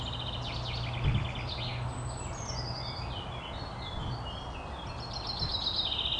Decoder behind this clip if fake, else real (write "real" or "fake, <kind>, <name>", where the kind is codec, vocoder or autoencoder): real